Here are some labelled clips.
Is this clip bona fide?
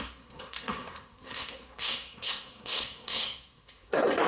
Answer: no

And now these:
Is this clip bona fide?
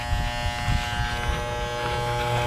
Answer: yes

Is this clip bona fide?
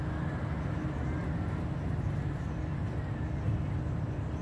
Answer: yes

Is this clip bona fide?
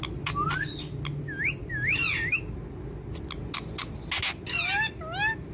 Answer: yes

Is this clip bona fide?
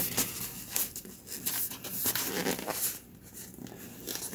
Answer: yes